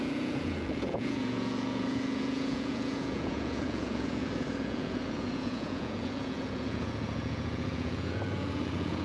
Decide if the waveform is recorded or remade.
remade